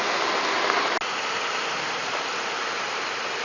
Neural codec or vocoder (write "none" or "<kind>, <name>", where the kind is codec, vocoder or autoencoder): none